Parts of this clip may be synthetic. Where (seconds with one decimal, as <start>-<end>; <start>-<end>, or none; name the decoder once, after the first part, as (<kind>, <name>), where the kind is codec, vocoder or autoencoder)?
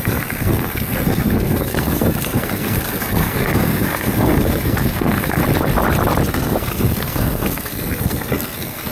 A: 0.0-5.4 (codec, SNAC); 6.3-8.9